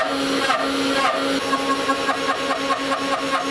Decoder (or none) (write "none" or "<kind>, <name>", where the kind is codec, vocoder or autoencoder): none